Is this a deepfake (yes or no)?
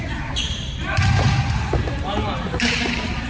yes